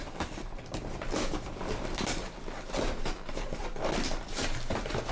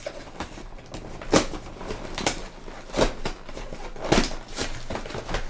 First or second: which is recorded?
second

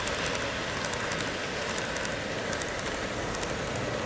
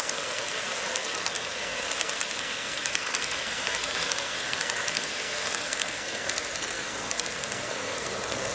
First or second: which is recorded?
first